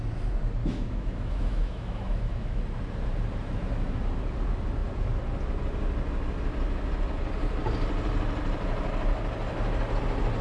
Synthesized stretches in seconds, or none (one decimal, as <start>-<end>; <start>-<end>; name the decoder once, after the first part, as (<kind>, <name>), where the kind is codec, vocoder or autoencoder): 0.6-2.6 (autoencoder, DAC-VAE)

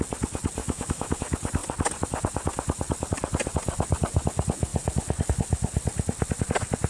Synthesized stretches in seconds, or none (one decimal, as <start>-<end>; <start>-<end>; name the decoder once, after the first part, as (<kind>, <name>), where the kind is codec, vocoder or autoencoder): 0.6-1.2 (autoencoder, DAC-VAE)

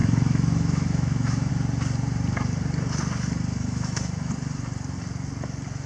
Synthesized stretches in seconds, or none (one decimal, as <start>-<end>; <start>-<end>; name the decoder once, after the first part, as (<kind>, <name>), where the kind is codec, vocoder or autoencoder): 0.0-1.5 (autoencoder, DAC-VAE); 3.5-4.3